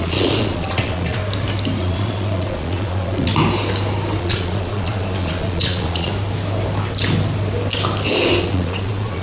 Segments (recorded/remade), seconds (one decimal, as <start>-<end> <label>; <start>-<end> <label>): 0.0-1.2 remade; 1.2-1.8 recorded; 1.8-3.3 remade; 3.3-4.2 recorded; 4.2-6.1 remade; 6.1-8.4 recorded; 8.4-9.2 remade